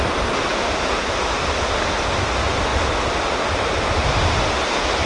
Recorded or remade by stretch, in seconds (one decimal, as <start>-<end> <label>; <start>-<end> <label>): 0.0-2.7 recorded; 2.7-4.4 remade; 4.4-5.1 recorded